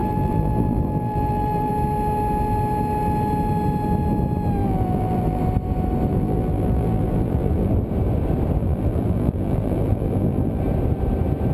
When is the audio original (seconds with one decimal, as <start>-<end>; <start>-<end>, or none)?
1.7-4.6; 5.4-6.1; 7.7-8.6; 10.6-11.5